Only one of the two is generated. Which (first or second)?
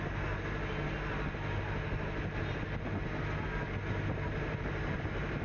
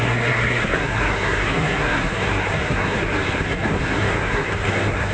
second